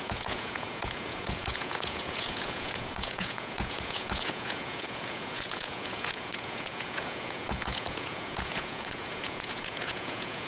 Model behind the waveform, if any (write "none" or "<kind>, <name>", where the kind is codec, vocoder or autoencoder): vocoder, Vocos